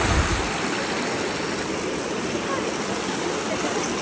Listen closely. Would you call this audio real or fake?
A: real